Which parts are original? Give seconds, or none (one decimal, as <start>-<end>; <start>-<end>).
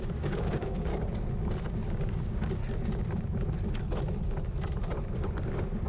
0.9-1.9; 2.6-5.9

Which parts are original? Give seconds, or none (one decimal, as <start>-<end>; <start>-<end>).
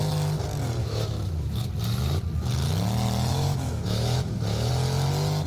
0.0-0.8; 1.7-3.3; 4.7-5.5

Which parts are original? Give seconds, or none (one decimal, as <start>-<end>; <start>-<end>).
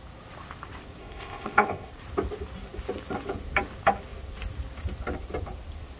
0.0-1.0; 1.9-6.0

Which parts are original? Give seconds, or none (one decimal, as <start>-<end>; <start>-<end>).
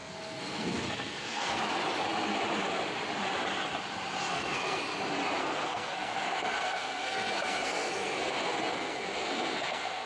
1.6-4.3; 4.8-5.4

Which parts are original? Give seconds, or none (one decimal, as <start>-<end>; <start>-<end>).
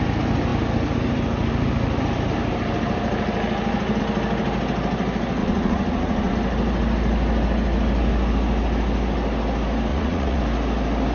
0.0-5.4; 6.3-9.9; 10.4-11.1